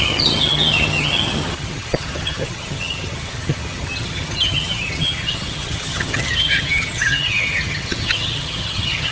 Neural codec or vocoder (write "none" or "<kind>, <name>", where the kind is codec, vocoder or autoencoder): vocoder, HiFi-GAN